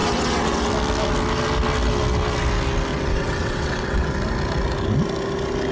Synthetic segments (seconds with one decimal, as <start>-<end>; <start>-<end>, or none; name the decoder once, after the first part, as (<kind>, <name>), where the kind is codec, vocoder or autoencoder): 0.0-0.7 (vocoder, WaveNeXt); 2.9-4.1